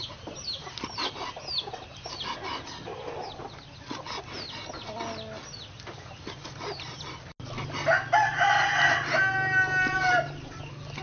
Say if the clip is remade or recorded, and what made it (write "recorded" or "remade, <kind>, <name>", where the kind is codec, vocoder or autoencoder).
recorded